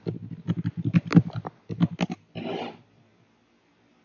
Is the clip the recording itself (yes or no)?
yes